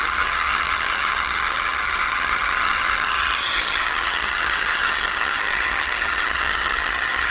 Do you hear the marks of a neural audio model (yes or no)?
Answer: yes